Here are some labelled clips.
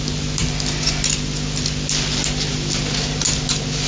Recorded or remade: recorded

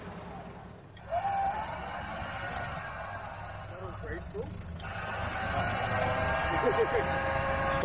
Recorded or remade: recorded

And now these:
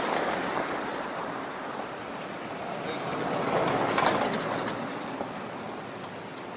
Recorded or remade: recorded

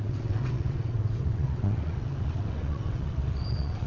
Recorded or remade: remade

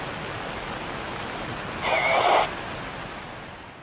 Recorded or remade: recorded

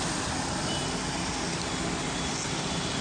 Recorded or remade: recorded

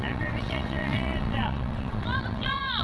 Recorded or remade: remade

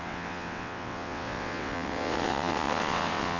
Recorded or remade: remade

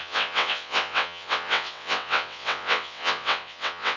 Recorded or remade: remade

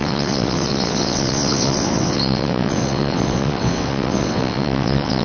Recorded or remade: remade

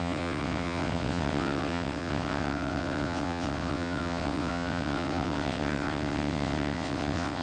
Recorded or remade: remade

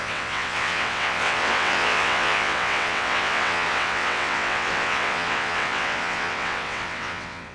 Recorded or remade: remade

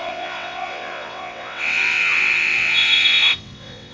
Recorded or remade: remade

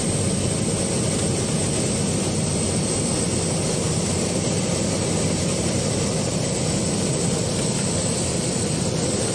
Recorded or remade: recorded